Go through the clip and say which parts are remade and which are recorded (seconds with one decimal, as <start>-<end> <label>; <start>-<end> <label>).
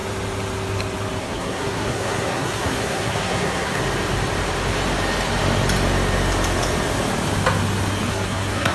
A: 0.0-1.2 recorded; 1.2-3.8 remade; 3.8-8.1 recorded; 8.1-8.7 remade